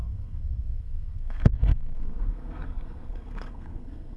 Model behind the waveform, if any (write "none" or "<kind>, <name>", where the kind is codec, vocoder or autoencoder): codec, SNAC